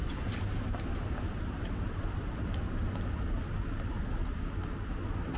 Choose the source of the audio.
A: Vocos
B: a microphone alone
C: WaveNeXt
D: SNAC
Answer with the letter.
B